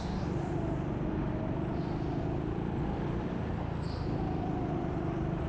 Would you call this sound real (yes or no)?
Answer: no